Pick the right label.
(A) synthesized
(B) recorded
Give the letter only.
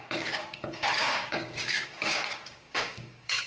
A